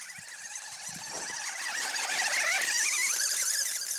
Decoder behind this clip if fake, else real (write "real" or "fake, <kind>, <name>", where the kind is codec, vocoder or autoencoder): real